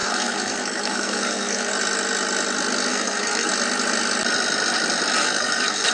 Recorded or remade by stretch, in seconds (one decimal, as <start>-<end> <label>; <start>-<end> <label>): 0.0-1.7 remade; 1.7-2.9 recorded; 2.9-3.5 remade; 3.5-5.2 recorded; 5.2-5.9 remade

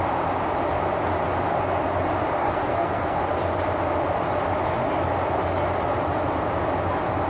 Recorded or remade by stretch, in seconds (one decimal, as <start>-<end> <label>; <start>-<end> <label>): 0.0-2.4 recorded; 2.4-3.2 remade; 3.2-7.3 recorded

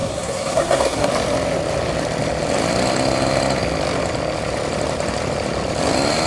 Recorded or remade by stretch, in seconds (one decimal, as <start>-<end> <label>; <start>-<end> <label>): 0.0-1.1 remade; 1.1-6.3 recorded